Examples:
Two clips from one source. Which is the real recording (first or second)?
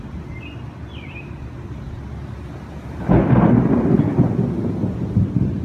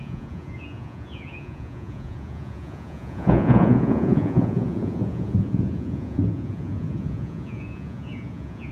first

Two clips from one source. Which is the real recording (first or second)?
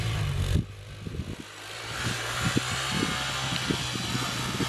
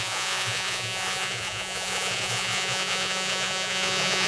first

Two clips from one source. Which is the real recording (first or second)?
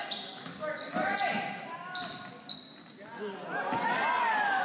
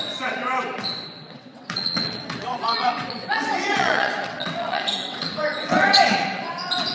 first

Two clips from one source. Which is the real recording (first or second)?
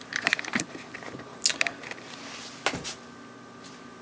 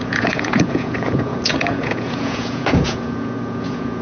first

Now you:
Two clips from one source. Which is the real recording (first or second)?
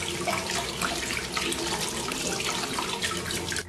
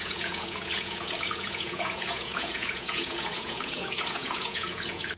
first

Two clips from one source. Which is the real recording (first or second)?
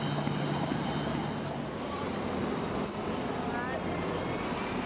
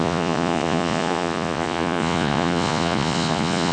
first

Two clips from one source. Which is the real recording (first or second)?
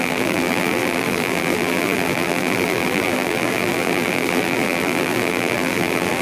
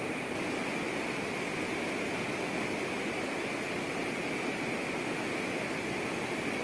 second